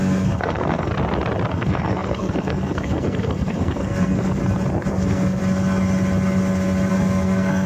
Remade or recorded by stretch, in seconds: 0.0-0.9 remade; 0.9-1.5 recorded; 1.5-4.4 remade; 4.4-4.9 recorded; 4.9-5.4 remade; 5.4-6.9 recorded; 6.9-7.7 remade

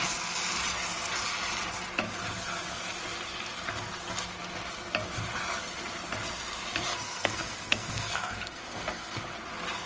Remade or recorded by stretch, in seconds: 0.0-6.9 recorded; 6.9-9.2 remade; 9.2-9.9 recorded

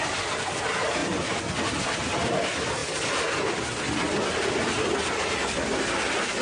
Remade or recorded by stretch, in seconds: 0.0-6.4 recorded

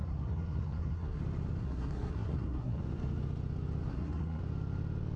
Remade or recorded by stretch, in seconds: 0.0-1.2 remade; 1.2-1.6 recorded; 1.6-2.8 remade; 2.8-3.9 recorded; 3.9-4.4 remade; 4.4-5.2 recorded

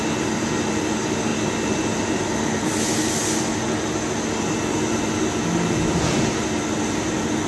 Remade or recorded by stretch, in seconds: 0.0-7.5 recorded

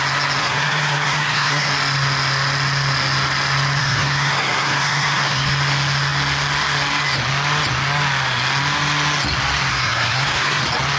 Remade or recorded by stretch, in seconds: 0.0-0.4 recorded; 0.4-1.7 remade; 1.7-3.8 recorded; 3.8-5.5 remade; 5.5-9.7 recorded; 9.7-10.6 remade; 10.6-11.0 recorded